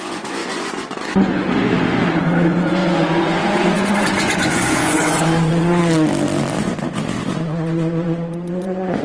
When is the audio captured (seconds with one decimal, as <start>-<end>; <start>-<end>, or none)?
5.8-6.6